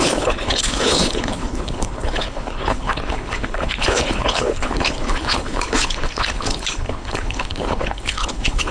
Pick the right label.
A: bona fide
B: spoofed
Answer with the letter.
B